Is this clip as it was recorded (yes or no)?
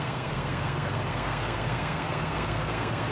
no